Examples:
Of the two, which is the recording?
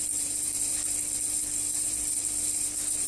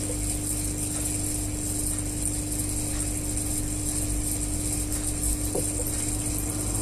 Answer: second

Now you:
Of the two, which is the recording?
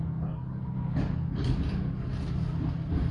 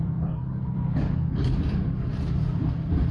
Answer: first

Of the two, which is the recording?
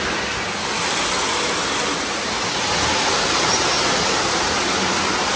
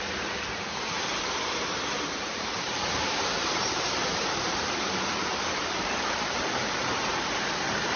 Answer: first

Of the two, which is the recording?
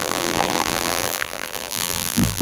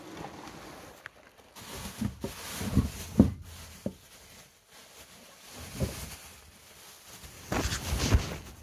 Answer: second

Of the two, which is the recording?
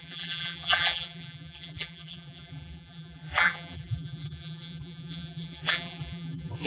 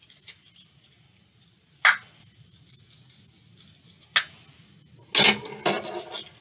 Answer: second